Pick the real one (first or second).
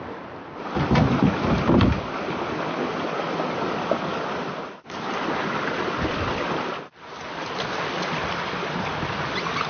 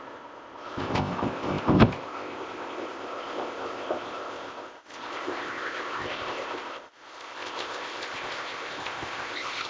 first